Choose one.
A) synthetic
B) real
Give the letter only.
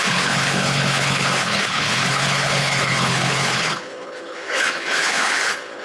A